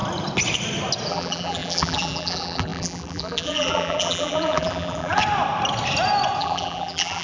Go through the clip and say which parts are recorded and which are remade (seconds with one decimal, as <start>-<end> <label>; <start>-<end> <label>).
0.0-1.1 recorded; 1.1-5.2 remade; 5.2-6.4 recorded; 6.4-7.2 remade